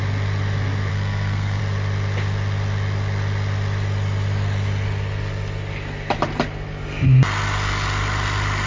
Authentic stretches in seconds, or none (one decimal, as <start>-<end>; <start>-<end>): 0.0-0.9; 1.6-8.7